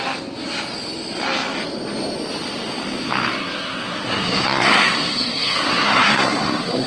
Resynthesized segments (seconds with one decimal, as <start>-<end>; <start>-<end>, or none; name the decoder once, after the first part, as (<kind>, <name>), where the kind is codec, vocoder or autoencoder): 3.3-6.9 (codec, SNAC)